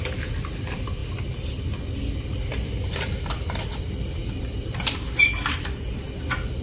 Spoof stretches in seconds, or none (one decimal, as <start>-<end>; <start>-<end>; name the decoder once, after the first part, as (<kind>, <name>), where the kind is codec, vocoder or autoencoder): none